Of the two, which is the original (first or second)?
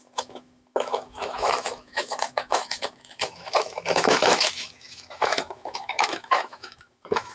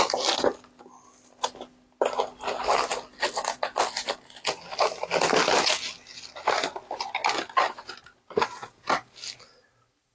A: second